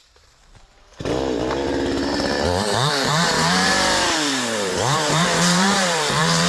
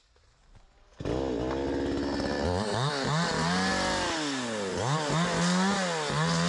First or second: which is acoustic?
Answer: second